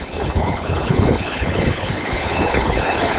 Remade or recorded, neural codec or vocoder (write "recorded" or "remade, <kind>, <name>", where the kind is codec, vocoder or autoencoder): remade, codec, HILCodec